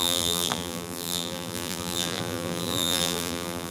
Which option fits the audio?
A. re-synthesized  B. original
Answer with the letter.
A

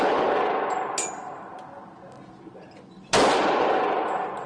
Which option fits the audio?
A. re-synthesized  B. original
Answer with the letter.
B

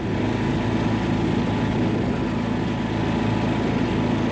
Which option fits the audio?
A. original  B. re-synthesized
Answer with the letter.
A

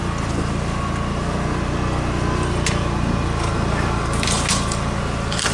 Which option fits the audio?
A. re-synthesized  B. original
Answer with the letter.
B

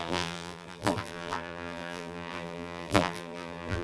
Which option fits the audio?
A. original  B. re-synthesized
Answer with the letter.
B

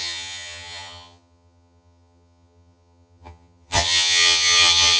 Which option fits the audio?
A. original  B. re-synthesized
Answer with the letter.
B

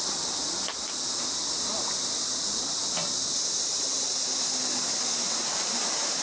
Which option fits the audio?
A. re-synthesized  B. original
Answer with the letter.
B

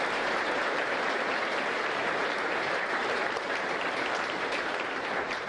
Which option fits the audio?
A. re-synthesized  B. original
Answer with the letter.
A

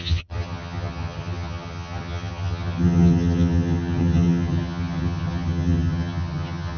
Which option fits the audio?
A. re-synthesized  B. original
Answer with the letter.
A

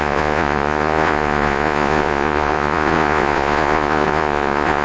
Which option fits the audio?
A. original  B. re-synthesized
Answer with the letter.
B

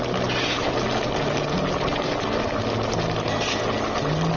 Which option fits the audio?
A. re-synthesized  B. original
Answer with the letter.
B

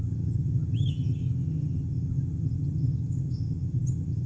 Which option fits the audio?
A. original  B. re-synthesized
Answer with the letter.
B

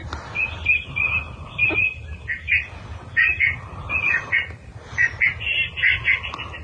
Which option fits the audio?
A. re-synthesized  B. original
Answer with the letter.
B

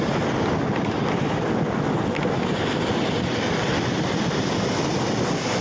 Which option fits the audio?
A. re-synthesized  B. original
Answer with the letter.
B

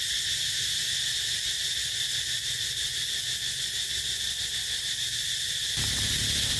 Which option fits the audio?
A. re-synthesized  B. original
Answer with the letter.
B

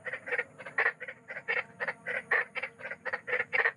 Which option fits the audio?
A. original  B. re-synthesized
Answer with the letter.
B